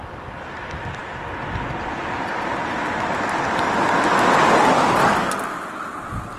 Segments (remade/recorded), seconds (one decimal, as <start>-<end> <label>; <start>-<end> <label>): 0.0-6.4 recorded